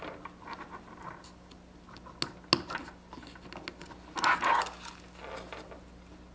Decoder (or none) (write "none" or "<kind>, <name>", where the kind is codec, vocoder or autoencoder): none